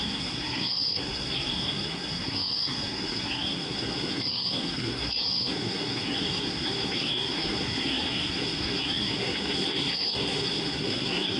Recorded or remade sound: remade